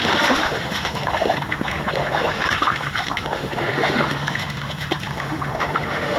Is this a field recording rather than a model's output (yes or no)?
no